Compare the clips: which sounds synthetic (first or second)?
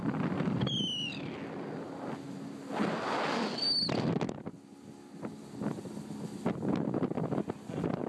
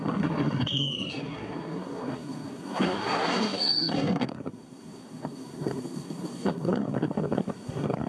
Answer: second